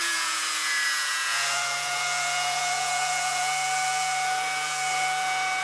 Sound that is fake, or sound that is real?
fake